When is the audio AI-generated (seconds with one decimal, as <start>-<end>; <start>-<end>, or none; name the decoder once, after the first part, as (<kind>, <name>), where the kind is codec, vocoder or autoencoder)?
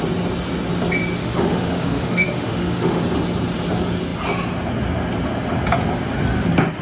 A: 1.2-3.0 (autoencoder, DAC-VAE)